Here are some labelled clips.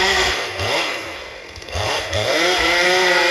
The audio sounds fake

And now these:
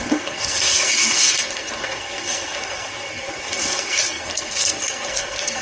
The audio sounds fake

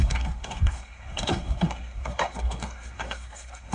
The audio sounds fake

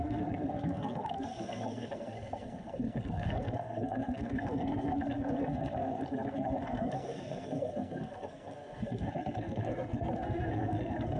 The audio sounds fake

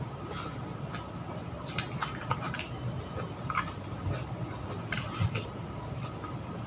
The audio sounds real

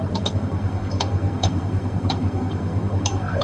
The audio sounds fake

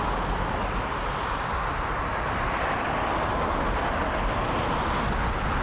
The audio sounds real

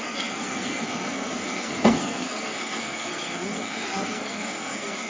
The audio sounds fake